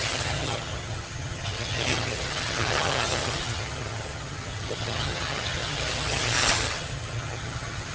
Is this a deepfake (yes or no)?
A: yes